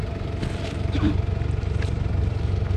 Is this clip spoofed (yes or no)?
no